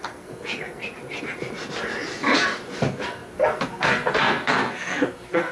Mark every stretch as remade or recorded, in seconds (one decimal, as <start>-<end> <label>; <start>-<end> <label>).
0.0-0.8 remade; 0.8-2.7 recorded; 2.7-5.5 remade